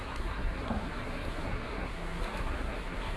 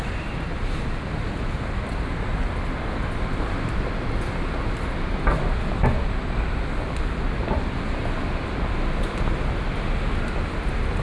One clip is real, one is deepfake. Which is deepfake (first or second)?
first